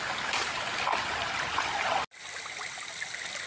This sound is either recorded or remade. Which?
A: recorded